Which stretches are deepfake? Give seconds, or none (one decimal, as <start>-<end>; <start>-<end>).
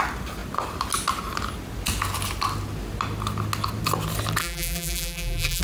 4.4-5.6